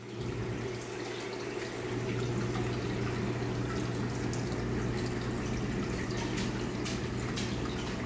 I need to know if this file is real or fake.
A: real